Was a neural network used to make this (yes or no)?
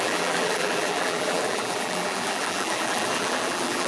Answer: yes